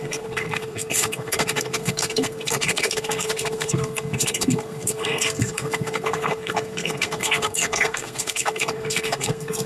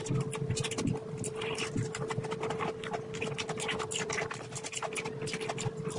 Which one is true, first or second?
second